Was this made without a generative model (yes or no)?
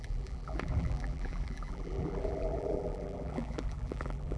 no